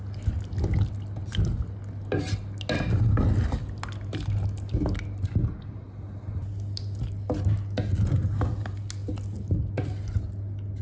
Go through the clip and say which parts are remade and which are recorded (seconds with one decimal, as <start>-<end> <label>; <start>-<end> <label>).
0.0-10.8 recorded